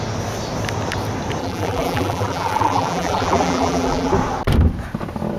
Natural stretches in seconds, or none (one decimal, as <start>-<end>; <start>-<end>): 0.0-1.4; 4.1-5.4